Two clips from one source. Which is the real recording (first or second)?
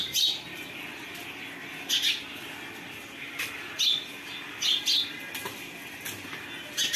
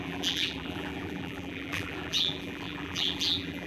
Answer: first